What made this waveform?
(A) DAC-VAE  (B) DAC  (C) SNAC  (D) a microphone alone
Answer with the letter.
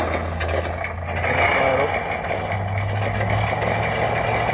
D